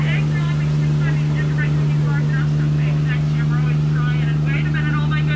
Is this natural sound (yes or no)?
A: yes